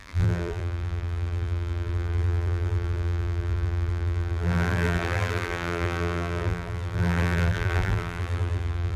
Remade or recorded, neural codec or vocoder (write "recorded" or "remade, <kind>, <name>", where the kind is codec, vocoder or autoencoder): remade, vocoder, BigVGAN v2